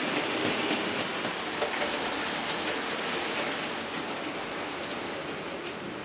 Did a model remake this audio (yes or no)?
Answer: no